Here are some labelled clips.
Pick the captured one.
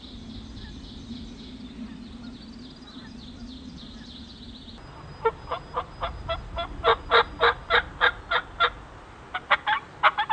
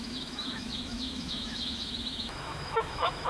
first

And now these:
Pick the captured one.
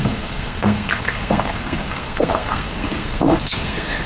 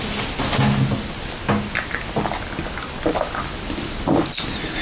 second